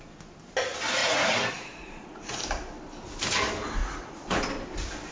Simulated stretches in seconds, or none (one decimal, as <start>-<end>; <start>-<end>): 1.0-2.4; 3.8-4.4